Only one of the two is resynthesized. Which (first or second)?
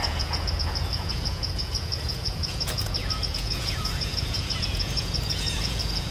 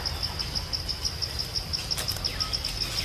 first